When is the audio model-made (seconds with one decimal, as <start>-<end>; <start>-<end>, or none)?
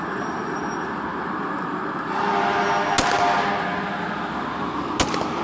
none